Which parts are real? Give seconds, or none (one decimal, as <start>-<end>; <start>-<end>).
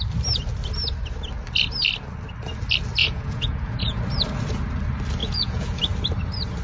0.0-3.0; 4.0-5.2; 5.8-6.6